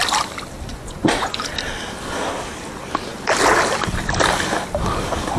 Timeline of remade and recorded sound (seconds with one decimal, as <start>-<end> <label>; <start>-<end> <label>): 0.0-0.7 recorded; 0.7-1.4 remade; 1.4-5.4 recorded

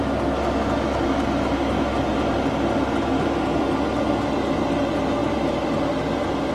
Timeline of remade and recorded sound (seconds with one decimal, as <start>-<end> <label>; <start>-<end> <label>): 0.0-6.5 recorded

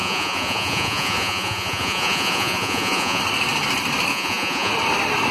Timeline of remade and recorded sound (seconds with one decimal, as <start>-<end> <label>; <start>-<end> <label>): 0.0-3.2 remade; 3.2-4.1 recorded; 4.1-4.7 remade; 4.7-5.3 recorded

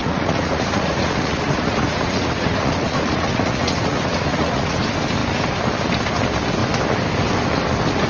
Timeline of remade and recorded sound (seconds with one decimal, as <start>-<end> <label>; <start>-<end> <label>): 0.0-4.8 remade; 4.8-8.1 recorded

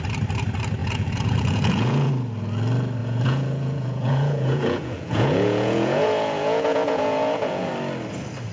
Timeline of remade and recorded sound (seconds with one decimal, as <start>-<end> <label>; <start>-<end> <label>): 0.0-0.8 recorded; 0.8-2.1 remade; 2.1-3.0 recorded; 3.0-7.7 remade; 7.7-8.5 recorded